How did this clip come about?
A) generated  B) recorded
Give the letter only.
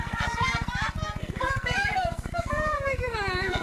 A